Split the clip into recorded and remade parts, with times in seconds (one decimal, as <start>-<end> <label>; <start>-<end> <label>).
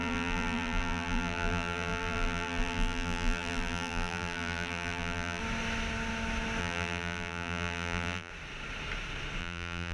0.0-5.4 remade; 5.4-6.6 recorded; 6.6-8.3 remade; 8.3-9.4 recorded; 9.4-9.9 remade